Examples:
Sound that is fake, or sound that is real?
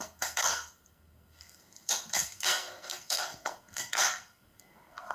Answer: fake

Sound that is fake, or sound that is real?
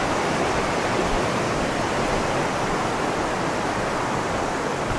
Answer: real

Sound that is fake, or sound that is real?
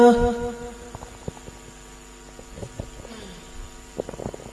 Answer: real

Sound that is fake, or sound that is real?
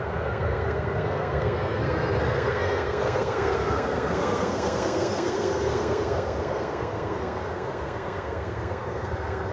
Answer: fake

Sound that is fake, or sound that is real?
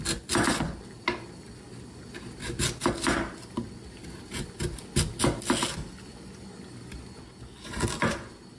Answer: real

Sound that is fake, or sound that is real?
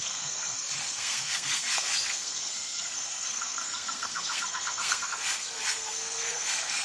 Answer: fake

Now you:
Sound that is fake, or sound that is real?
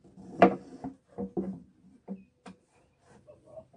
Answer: real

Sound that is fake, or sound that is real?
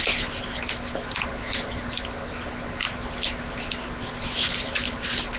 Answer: real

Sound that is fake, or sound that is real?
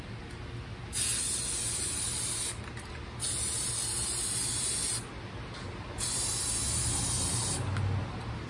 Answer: real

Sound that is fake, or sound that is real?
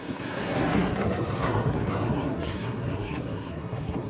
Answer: fake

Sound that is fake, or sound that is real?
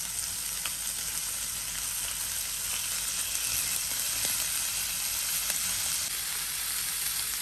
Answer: real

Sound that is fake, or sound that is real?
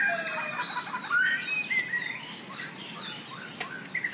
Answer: real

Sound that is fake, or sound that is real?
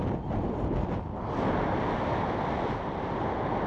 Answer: real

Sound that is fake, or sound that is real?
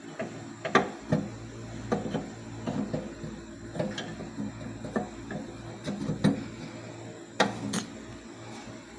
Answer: real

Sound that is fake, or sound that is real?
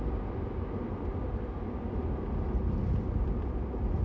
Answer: real